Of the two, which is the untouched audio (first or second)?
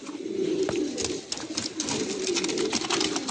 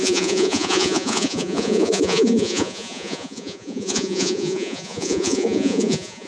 first